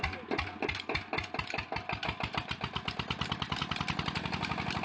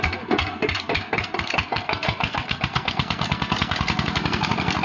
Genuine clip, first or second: first